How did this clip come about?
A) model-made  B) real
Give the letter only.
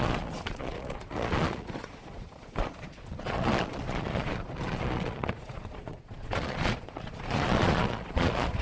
A